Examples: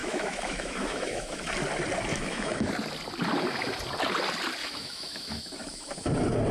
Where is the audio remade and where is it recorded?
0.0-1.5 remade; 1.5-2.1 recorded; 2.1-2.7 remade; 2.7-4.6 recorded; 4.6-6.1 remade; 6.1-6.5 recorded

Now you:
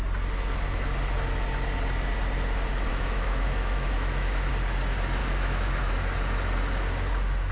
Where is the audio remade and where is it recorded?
0.0-2.9 recorded; 2.9-4.5 remade; 4.5-5.2 recorded; 5.2-5.9 remade; 5.9-7.5 recorded

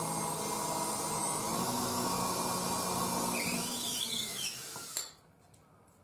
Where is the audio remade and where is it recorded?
0.0-1.2 recorded; 1.2-2.4 remade; 2.4-3.7 recorded; 3.7-5.2 remade; 5.2-6.0 recorded

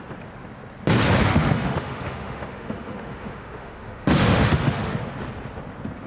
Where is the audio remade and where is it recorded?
0.0-1.3 recorded; 1.3-5.0 remade; 5.0-6.1 recorded